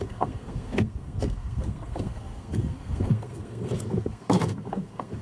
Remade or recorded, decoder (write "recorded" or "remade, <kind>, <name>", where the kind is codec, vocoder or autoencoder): remade, codec, SNAC